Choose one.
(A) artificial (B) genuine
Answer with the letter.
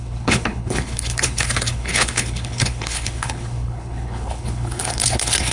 A